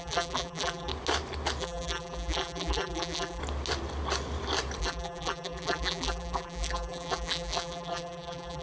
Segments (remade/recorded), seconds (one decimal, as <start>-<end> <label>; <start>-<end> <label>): 0.0-0.9 remade; 0.9-1.6 recorded; 1.6-3.4 remade; 3.4-4.8 recorded; 4.8-8.6 remade